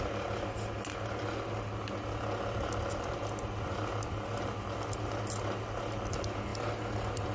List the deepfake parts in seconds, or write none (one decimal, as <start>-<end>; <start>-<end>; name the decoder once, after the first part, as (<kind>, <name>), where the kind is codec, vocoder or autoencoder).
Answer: none